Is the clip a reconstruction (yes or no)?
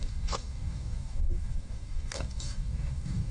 yes